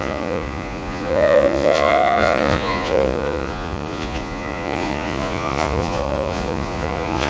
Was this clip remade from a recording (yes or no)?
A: yes